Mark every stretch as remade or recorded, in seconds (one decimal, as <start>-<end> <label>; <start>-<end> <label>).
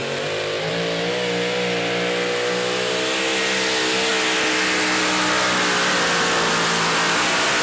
0.0-7.6 recorded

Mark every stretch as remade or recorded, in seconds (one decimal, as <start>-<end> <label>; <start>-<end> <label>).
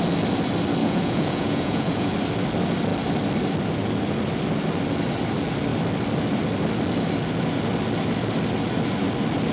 0.0-0.8 recorded; 0.8-2.1 remade; 2.1-9.5 recorded